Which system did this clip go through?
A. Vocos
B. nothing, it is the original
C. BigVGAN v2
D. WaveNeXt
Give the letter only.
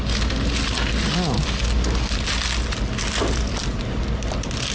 B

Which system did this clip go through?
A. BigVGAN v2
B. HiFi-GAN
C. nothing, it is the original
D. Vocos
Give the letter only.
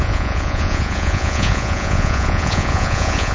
D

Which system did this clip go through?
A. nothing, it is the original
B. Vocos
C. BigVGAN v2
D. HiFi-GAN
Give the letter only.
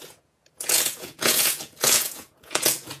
B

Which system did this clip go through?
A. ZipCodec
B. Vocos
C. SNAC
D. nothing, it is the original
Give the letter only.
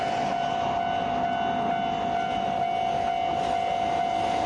D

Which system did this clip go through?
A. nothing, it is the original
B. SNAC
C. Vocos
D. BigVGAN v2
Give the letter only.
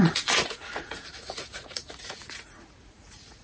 C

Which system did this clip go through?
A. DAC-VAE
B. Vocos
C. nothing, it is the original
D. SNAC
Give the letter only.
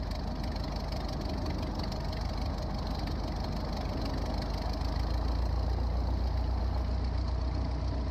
C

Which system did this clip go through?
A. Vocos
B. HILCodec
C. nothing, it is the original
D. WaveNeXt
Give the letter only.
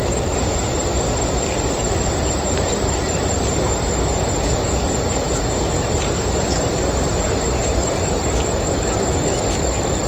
C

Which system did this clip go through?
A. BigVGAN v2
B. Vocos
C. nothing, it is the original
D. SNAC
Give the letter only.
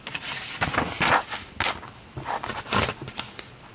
C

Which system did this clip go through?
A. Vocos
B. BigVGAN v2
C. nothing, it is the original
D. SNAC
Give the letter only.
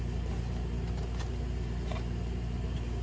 C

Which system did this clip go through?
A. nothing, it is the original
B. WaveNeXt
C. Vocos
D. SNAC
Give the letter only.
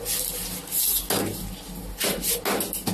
A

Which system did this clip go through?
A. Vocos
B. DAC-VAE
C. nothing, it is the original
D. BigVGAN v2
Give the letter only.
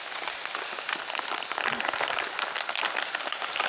C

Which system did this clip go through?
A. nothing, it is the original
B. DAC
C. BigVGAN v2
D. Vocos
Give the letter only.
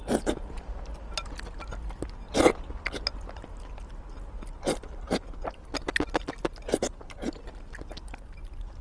A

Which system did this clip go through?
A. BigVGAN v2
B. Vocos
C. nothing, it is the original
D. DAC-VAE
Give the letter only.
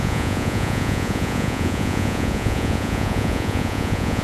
B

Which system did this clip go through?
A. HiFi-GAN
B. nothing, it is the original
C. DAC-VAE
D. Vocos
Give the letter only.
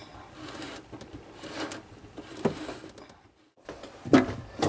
B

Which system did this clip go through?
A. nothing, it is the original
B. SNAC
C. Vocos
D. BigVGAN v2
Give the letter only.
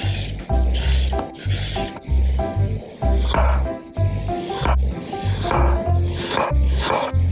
A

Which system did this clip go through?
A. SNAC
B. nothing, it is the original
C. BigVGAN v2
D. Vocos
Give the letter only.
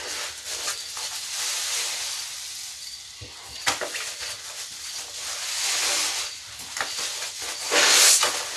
B